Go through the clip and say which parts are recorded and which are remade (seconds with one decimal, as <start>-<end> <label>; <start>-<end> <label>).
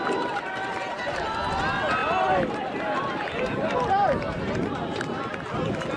0.0-6.0 recorded